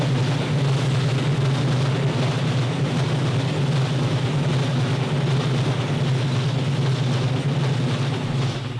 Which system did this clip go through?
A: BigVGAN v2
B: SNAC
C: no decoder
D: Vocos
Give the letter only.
C